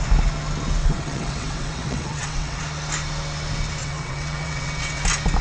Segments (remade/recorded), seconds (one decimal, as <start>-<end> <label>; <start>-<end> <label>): 0.0-0.8 recorded; 0.8-2.6 remade; 2.6-3.8 recorded; 3.8-5.0 remade; 5.0-5.4 recorded